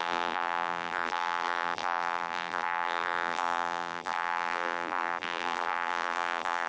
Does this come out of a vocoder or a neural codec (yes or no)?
yes